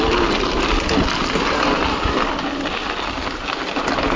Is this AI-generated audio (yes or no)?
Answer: no